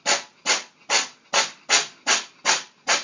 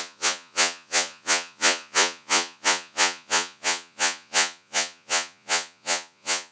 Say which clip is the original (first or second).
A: first